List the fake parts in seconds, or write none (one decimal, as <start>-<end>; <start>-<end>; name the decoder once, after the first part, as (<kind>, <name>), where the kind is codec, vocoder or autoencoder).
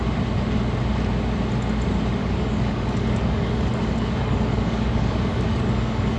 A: 2.2-6.2 (codec, DAC)